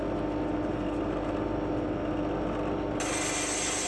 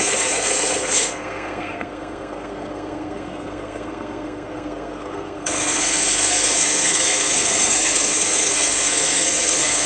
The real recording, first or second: first